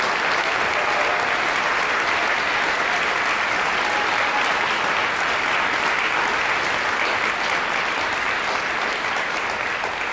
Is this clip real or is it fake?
real